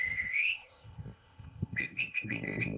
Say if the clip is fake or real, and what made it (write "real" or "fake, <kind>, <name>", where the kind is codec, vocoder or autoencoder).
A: fake, codec, ZipCodec